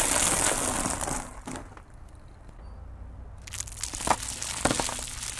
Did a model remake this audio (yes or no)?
no